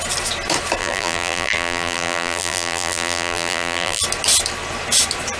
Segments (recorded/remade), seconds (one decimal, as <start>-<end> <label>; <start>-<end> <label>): 0.0-0.8 recorded; 0.8-4.0 remade; 4.0-5.4 recorded